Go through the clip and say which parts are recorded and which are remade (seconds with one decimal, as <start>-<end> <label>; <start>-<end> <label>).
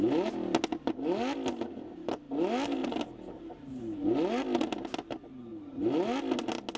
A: 0.0-6.8 recorded